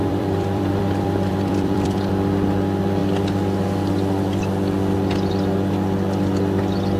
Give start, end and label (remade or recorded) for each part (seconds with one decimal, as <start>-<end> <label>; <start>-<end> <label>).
0.0-2.1 remade; 2.1-7.0 recorded

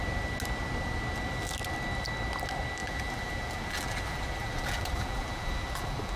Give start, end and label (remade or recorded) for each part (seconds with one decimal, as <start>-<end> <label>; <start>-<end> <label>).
0.0-2.8 recorded; 2.8-6.2 remade

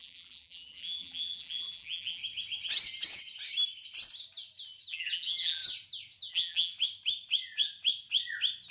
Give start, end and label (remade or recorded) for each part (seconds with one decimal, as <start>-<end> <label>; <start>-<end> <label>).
0.0-2.2 remade; 2.2-4.9 recorded; 4.9-5.6 remade; 5.6-6.3 recorded; 6.3-6.7 remade; 6.7-8.7 recorded

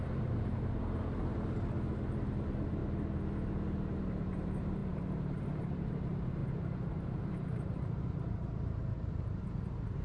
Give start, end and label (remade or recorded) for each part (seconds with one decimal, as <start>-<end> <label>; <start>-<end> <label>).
0.0-2.8 remade; 2.8-4.0 recorded; 4.0-10.0 remade